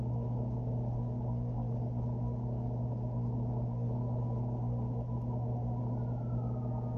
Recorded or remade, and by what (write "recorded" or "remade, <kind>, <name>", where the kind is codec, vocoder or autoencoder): recorded